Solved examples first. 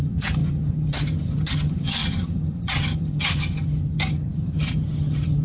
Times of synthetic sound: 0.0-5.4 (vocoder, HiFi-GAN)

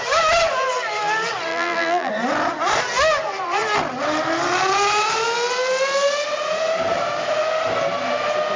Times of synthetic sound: 1.5-2.1 (vocoder, BigVGAN v2)

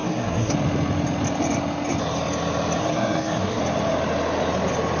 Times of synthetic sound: 0.0-0.5 (codec, SNAC); 2.8-3.6

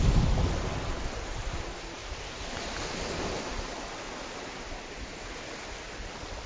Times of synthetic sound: none

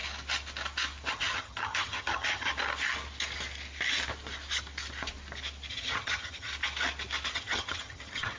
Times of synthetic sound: 1.1-2.5 (vocoder, HiFi-GAN); 5.7-6.5; 7.3-8.4

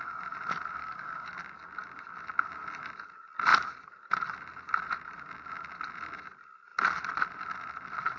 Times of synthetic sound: 0.8-1.3 (codec, DAC)

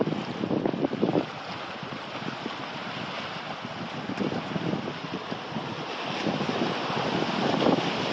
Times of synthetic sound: none